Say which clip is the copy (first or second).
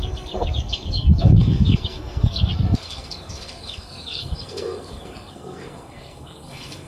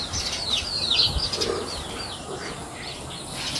first